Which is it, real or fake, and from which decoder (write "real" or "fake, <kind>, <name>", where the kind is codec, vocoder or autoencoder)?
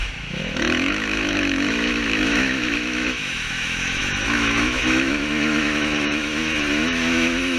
fake, autoencoder, DAC-VAE